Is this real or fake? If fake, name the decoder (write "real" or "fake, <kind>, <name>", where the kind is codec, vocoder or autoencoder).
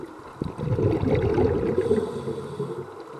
real